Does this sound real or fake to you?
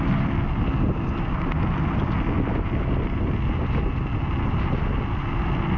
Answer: real